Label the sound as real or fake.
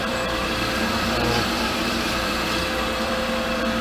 fake